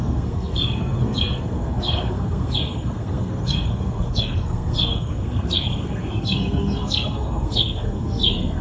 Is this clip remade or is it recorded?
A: remade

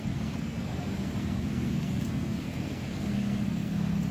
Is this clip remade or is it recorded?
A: remade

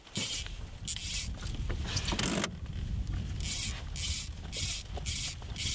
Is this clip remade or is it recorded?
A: recorded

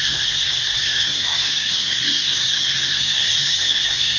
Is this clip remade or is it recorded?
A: remade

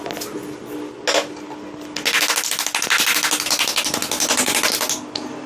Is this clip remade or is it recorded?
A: recorded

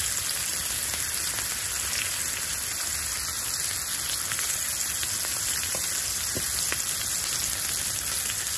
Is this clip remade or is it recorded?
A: recorded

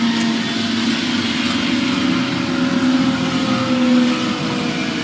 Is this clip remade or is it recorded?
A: recorded